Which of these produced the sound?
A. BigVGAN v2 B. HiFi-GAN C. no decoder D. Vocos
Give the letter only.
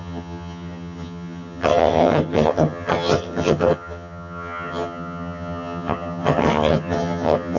B